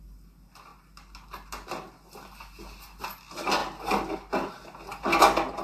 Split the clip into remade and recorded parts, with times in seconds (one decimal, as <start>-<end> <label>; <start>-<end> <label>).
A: 0.0-5.6 recorded